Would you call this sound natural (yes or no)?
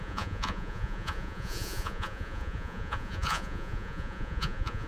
no